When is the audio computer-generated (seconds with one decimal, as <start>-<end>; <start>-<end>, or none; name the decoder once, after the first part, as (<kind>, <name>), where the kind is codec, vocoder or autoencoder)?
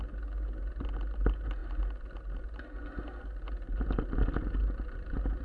none